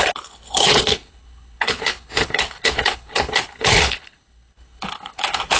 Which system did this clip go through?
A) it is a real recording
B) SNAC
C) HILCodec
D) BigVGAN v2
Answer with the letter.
C